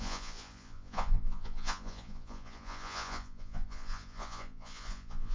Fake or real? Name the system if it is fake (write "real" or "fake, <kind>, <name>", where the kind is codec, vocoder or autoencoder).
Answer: fake, vocoder, Vocos